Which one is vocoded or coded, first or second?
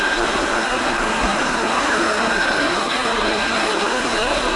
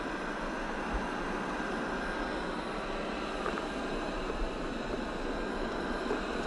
first